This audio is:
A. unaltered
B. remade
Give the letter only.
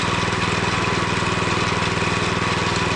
A